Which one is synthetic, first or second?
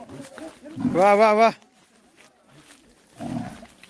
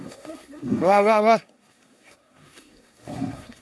second